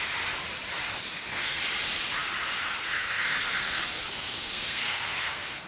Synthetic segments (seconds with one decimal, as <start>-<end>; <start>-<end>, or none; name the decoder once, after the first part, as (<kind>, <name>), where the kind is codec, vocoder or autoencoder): 1.1-1.6 (codec, SNAC); 2.6-5.7